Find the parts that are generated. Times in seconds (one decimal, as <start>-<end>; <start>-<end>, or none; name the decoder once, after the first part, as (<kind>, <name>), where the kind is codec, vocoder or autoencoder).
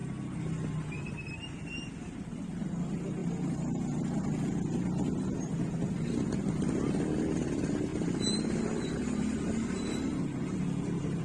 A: 3.2-4.4 (vocoder, BigVGAN v2)